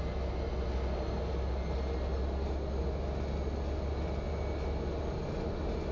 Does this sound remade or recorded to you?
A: recorded